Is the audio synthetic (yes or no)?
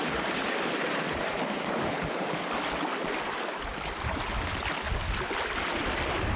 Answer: no